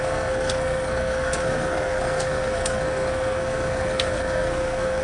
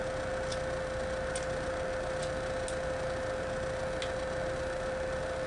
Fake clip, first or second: first